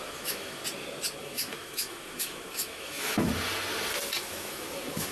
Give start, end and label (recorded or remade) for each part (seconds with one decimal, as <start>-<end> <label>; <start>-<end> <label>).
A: 0.0-0.6 remade; 0.6-1.2 recorded; 1.2-3.3 remade; 3.3-4.3 recorded; 4.3-5.1 remade